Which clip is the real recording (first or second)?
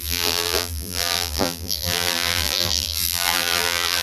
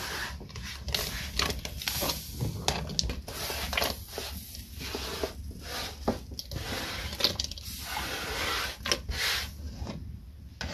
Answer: second